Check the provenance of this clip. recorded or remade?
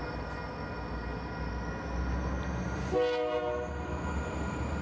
recorded